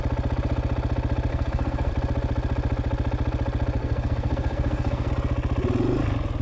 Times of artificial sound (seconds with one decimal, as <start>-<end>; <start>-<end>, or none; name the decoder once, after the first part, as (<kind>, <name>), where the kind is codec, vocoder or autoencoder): 1.3-1.9 (codec, SNAC); 3.8-5.1